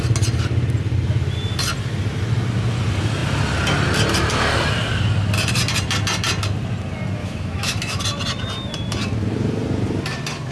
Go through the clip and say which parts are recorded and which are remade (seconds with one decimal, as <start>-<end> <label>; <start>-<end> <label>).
0.0-7.2 recorded; 7.2-8.0 remade; 8.0-10.5 recorded